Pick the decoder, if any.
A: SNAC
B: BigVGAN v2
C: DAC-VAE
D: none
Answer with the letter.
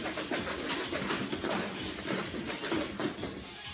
B